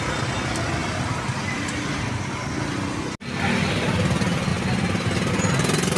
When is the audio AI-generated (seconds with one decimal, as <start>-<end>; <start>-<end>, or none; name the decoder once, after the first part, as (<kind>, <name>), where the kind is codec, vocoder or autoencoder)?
none